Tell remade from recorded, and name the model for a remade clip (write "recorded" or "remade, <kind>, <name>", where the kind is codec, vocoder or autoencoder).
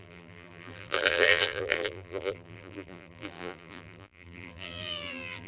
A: remade, vocoder, BigVGAN v2